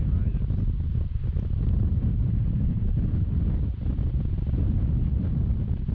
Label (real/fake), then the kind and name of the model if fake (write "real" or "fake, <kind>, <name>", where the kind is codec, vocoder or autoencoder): fake, vocoder, BigVGAN v2